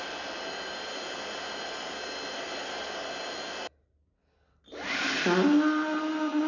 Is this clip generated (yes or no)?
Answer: no